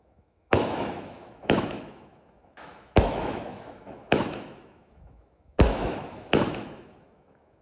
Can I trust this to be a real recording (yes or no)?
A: no